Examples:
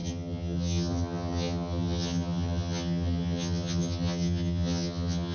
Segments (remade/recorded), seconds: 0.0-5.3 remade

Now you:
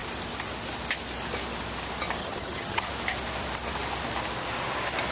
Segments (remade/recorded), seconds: 0.0-2.2 recorded; 2.2-2.9 remade; 2.9-5.1 recorded